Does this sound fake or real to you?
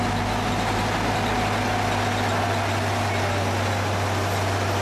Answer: real